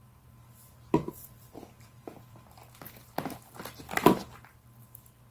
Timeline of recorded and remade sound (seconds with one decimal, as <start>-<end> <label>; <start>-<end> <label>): 0.0-3.2 remade; 3.2-5.3 recorded